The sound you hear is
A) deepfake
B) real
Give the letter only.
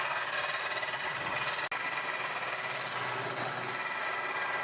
B